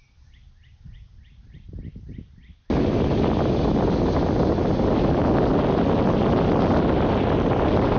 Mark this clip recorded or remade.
recorded